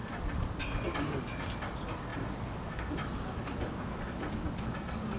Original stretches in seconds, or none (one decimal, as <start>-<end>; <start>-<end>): 0.0-5.2